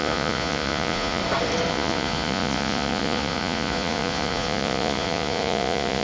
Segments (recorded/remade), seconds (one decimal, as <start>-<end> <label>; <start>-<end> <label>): 0.0-1.2 remade; 1.2-1.7 recorded; 1.7-6.0 remade